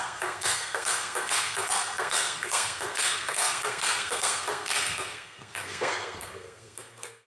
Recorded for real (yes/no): no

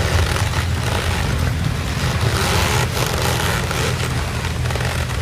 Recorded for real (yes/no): yes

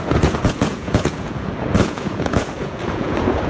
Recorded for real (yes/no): no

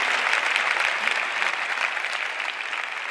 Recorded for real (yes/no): yes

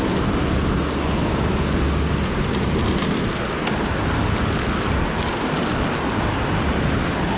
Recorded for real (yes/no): yes